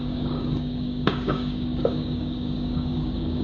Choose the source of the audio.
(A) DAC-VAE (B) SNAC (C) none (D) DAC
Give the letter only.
D